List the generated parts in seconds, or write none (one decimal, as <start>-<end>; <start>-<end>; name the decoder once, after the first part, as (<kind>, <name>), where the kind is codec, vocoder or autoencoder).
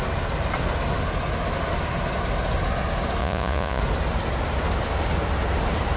3.2-3.8 (vocoder, Vocos)